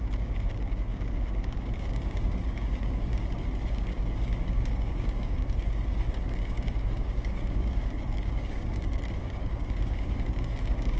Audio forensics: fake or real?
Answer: fake